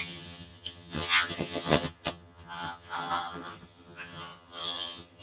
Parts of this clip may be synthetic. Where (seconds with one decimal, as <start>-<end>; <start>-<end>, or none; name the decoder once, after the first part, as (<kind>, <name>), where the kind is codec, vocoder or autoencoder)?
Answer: 0.0-5.2 (vocoder, HiFi-GAN)